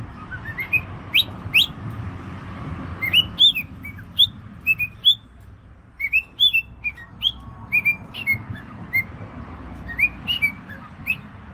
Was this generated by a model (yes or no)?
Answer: no